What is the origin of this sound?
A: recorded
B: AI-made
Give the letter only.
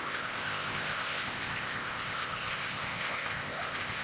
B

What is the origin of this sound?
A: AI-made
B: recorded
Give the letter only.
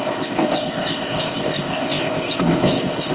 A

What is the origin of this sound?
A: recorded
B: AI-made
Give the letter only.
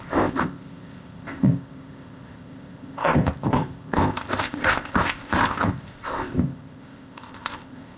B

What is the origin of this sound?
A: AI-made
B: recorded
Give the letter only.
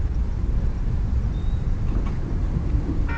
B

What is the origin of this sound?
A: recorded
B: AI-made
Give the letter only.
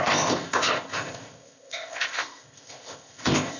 B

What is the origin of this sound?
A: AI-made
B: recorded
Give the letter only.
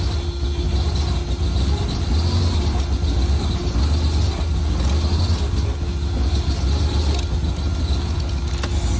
B